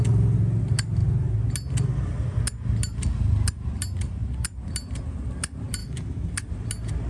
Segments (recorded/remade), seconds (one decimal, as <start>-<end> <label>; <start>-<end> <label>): 0.0-5.8 recorded; 5.8-6.3 remade; 6.3-7.1 recorded